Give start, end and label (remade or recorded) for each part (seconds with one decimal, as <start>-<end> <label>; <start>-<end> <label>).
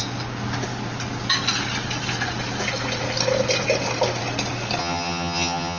0.0-4.8 recorded; 4.8-5.8 remade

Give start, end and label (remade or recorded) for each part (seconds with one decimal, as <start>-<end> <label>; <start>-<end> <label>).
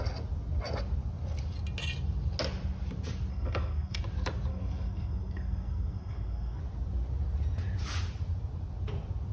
0.0-3.3 recorded; 3.3-4.0 remade; 4.0-4.5 recorded; 4.5-6.6 remade; 6.6-9.3 recorded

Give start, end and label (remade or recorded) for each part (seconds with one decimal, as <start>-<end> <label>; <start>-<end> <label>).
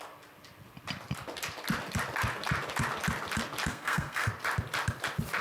0.0-3.7 recorded; 3.7-4.3 remade; 4.3-5.4 recorded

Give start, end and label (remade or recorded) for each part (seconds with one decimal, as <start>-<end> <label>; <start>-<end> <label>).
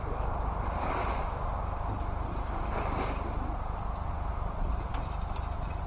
0.0-5.9 recorded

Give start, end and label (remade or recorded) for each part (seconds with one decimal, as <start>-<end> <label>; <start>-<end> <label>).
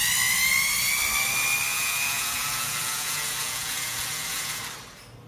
0.0-1.7 recorded; 1.7-4.6 remade; 4.6-5.3 recorded